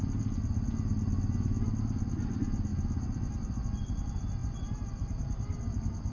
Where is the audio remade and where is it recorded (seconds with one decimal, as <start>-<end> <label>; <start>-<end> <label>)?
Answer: 0.0-4.4 recorded; 4.4-5.6 remade; 5.6-6.1 recorded